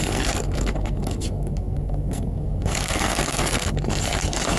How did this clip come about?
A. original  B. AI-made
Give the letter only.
B